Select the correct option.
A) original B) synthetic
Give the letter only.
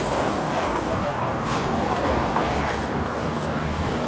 B